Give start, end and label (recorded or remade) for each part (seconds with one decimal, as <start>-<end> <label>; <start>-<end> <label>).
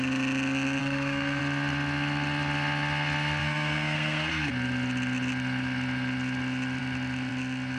0.0-0.8 recorded; 0.8-1.4 remade; 1.4-3.4 recorded; 3.4-4.5 remade; 4.5-7.8 recorded